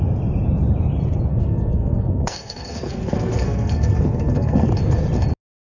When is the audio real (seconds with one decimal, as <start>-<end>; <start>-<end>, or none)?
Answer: 0.0-1.3; 4.7-5.6

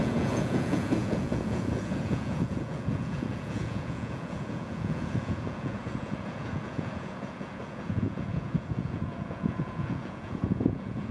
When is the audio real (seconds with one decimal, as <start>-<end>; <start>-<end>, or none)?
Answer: none

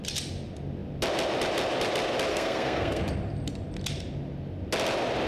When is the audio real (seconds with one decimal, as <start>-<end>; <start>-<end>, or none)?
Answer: 0.0-2.3; 3.0-5.3

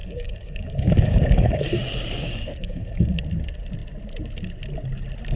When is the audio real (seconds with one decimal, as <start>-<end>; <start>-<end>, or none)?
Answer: 3.2-5.4

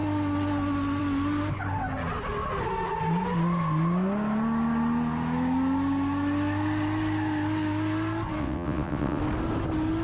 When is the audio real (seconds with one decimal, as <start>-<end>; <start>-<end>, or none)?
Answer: 0.0-8.4; 9.2-10.0

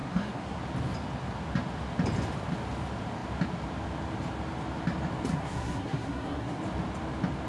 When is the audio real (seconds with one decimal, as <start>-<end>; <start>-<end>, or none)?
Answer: 0.6-5.3; 6.6-7.5